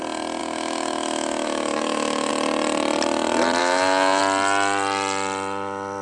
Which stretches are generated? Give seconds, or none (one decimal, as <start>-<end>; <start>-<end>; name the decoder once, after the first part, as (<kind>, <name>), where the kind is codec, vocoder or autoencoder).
0.4-2.3 (autoencoder, DAC-VAE); 3.6-4.2